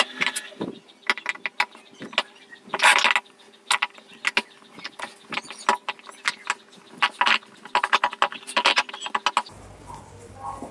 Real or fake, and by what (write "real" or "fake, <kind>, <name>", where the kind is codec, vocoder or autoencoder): real